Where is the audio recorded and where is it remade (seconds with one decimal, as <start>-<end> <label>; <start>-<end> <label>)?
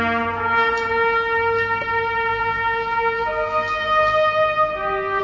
0.0-2.3 recorded; 2.3-5.2 remade